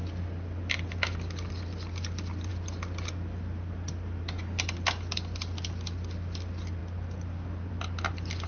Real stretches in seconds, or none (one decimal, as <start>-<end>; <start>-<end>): 0.0-8.5